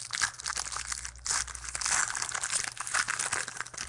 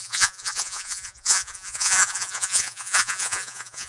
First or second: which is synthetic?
second